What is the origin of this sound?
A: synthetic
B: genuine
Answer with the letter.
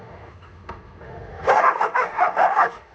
A